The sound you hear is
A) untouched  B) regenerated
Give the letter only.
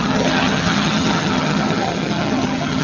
B